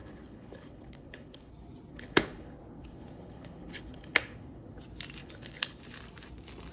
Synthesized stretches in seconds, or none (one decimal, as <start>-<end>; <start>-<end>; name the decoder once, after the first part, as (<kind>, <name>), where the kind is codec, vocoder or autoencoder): 0.0-1.5 (codec, HILCodec); 1.9-4.8; 5.2-5.8